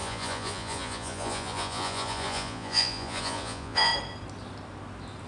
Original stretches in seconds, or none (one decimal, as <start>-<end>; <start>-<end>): 3.9-5.3